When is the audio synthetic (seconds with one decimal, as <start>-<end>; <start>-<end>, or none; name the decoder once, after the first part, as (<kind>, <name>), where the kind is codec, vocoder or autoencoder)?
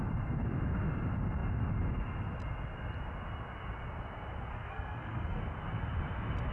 4.5-5.4 (codec, SNAC)